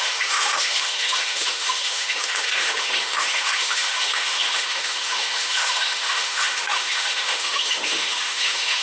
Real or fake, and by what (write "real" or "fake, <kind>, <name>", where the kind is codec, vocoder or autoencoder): fake, autoencoder, DAC-VAE